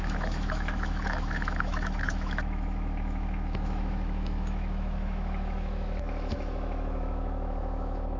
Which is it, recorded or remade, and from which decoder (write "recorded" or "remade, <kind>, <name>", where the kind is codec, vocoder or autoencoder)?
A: remade, autoencoder, DAC-VAE